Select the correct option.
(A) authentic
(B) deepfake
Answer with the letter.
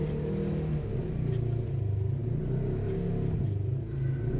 A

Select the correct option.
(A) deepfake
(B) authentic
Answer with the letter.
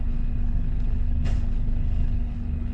A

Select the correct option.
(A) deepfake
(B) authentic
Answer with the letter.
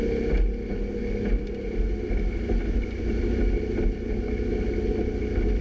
B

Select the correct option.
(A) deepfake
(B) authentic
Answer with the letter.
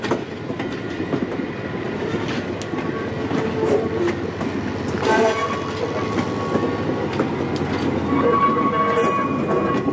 B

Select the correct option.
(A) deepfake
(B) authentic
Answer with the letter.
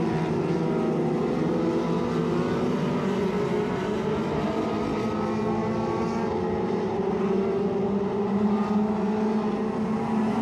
B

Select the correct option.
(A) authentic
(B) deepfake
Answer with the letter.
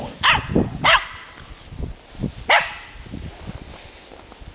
A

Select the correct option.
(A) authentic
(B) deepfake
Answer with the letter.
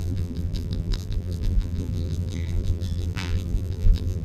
B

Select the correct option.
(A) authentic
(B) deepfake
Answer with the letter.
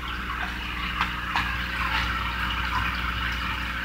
A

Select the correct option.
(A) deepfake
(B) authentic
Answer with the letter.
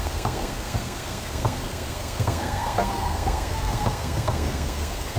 A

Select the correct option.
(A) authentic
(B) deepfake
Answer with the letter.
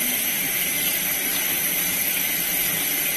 A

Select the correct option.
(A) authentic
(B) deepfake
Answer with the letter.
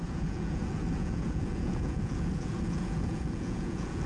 B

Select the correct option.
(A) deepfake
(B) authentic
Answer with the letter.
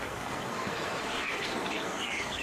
A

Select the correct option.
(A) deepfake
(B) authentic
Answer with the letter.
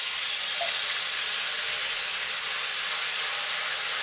B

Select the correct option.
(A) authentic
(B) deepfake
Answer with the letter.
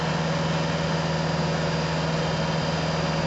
A